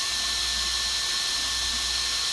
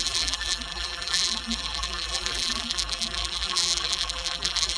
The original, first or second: first